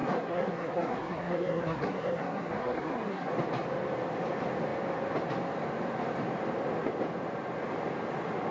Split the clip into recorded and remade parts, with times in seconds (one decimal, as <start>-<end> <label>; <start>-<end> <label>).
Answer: 0.0-3.3 remade; 3.3-8.5 recorded